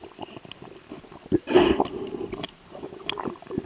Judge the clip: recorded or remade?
remade